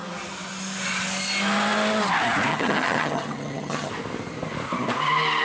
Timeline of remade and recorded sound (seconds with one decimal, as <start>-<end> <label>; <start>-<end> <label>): 0.0-2.5 recorded; 2.5-3.9 remade; 3.9-5.4 recorded